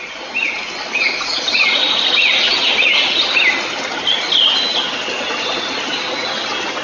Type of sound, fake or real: real